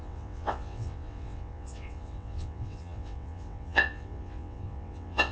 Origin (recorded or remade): remade